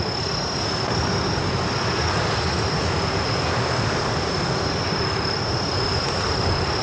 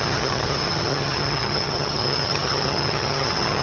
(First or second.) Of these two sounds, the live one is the first